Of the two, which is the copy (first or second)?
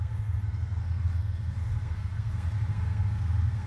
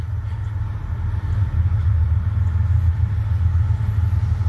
first